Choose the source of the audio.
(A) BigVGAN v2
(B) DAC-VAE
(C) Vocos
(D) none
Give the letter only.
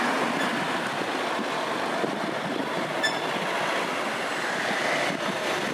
D